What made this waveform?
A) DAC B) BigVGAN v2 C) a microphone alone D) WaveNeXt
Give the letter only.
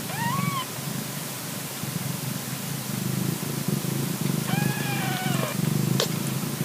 C